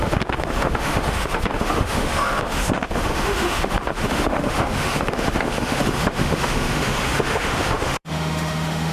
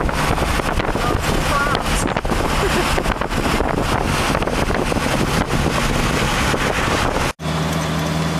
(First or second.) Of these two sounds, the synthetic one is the first